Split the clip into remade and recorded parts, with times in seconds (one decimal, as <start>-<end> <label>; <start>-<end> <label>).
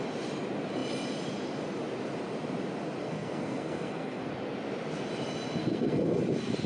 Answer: 0.0-3.0 recorded; 3.0-4.3 remade; 4.3-5.6 recorded; 5.6-6.2 remade; 6.2-6.7 recorded